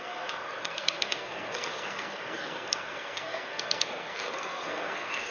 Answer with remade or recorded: remade